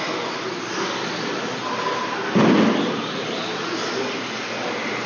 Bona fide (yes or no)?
yes